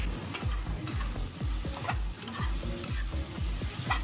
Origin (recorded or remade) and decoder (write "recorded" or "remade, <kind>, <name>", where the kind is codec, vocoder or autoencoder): recorded